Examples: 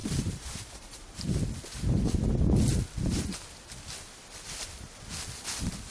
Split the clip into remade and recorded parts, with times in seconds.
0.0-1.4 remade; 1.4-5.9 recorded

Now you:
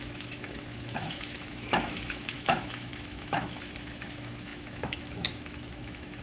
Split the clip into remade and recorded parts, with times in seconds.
0.0-6.2 remade

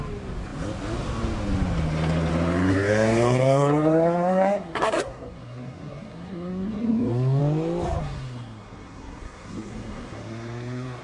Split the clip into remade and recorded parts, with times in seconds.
0.0-2.7 recorded; 2.7-7.4 remade; 7.4-8.0 recorded; 8.0-11.0 remade

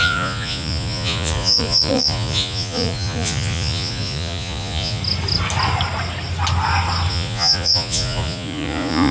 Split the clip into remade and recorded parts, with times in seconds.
0.0-5.0 remade; 5.0-7.1 recorded; 7.1-9.1 remade

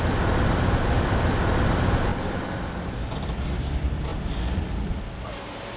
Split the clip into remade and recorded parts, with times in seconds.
0.0-5.8 recorded

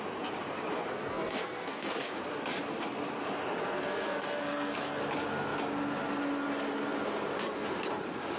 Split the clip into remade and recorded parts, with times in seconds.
0.0-0.9 recorded; 0.9-2.1 remade; 2.1-3.6 recorded; 3.6-5.0 remade; 5.0-8.4 recorded

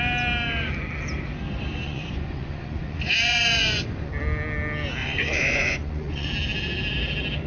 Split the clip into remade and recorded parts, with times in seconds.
0.0-1.8 recorded; 1.8-4.1 remade; 4.1-5.0 recorded; 5.0-6.3 remade; 6.3-7.5 recorded